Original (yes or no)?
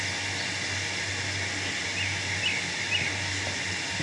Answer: yes